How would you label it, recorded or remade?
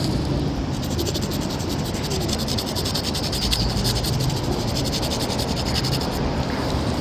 remade